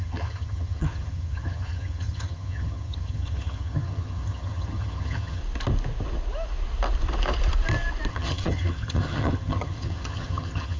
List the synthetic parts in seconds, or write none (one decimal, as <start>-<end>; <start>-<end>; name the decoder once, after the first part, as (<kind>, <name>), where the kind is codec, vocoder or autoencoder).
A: 0.0-5.4 (vocoder, HiFi-GAN); 8.1-10.8